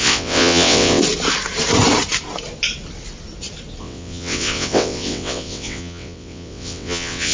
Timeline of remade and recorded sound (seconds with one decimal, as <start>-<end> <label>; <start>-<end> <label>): 0.0-1.0 remade; 1.0-3.8 recorded; 3.8-7.3 remade